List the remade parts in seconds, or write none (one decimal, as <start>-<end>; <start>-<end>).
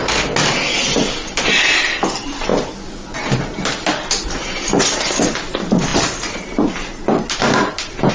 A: none